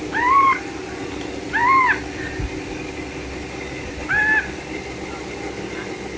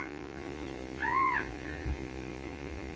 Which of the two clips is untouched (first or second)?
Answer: first